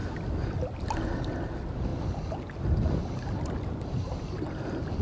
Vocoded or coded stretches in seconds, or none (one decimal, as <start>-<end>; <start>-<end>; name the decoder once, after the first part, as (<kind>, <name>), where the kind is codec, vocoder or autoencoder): none